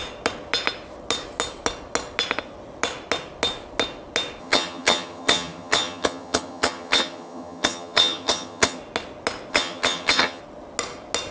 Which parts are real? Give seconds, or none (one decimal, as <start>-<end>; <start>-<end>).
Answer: 0.0-4.4; 8.8-9.5; 10.4-11.3